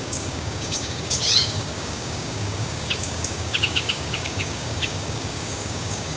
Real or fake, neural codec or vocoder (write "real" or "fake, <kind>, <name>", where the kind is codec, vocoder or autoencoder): fake, codec, DAC